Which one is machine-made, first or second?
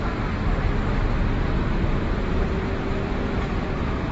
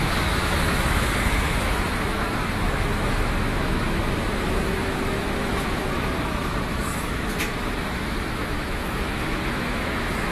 second